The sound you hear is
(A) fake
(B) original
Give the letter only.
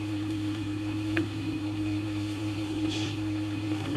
A